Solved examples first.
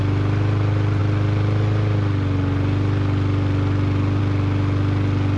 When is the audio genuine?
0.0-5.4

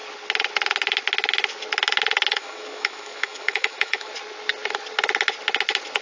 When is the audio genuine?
0.0-2.3; 4.1-6.0

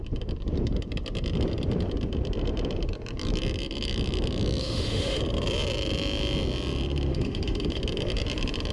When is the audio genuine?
0.0-4.6; 5.2-7.1; 7.8-8.7

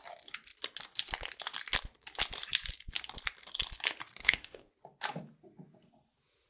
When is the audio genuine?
0.0-4.2; 4.7-6.5

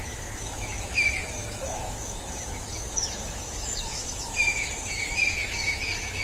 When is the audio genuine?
none

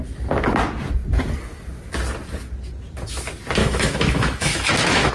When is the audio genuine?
0.0-3.6

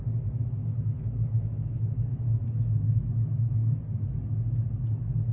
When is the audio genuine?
0.0-0.6; 3.8-5.3

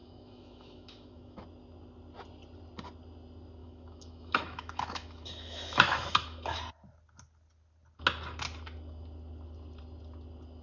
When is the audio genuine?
1.4-3.6; 6.6-10.6